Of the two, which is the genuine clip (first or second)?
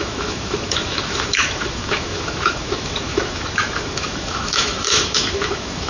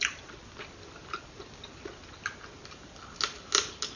second